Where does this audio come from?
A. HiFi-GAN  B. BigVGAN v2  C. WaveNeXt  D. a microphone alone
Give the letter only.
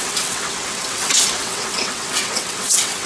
C